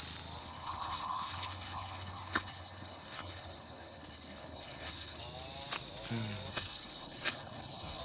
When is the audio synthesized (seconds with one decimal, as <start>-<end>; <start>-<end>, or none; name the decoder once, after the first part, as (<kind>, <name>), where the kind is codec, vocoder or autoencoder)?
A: 0.4-5.2 (codec, HILCodec); 6.5-8.0

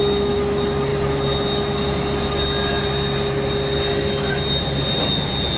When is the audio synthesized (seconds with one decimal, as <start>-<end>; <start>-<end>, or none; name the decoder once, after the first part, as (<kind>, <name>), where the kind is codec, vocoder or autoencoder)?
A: none

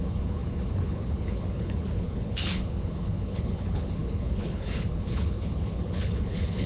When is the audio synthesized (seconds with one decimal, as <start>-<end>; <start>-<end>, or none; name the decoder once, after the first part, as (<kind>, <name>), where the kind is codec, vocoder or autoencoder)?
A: 0.0-6.7 (codec, HILCodec)

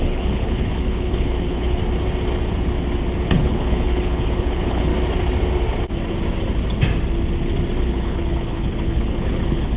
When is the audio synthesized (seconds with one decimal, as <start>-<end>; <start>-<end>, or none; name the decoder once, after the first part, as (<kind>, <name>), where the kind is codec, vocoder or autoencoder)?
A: 0.0-1.8 (codec, HILCodec); 3.3-4.9; 7.8-9.8

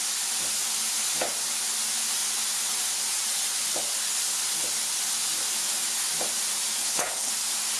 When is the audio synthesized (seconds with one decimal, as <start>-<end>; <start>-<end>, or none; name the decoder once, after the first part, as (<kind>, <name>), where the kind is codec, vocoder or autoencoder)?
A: 6.8-7.3 (codec, HILCodec)

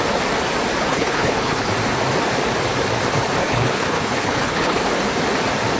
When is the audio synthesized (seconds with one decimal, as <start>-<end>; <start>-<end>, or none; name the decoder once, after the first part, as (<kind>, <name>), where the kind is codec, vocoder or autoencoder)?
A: 0.9-1.7 (codec, HILCodec); 3.4-4.8